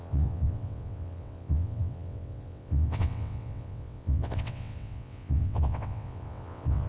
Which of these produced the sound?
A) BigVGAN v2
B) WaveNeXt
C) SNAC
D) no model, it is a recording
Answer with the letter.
B